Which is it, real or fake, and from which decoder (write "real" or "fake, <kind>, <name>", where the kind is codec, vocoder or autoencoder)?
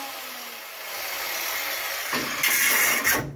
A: real